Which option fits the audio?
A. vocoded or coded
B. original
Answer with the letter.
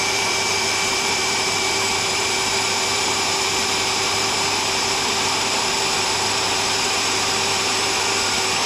A